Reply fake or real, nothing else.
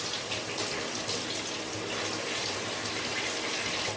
real